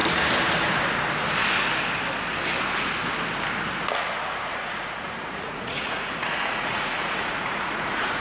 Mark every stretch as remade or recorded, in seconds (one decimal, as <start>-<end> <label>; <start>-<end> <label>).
0.0-4.5 recorded; 4.5-8.2 remade